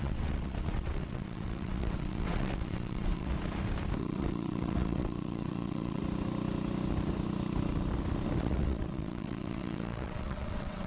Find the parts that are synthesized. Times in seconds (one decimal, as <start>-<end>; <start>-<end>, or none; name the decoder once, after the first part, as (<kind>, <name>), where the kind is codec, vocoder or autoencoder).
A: 0.0-3.3 (vocoder, WaveNeXt); 4.0-6.0; 8.4-10.9

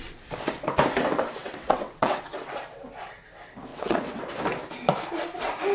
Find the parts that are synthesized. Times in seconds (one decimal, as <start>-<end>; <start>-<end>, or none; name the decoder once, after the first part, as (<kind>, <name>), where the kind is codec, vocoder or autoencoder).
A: 1.4-2.2 (vocoder, WaveNeXt); 3.7-4.2

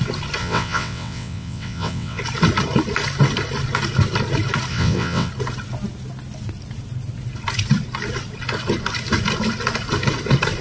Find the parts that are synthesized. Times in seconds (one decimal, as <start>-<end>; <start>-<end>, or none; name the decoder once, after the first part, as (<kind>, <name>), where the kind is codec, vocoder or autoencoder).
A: 0.4-2.2 (vocoder, WaveNeXt); 4.7-5.3